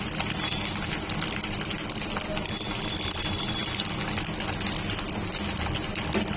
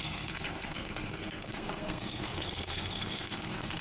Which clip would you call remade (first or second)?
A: second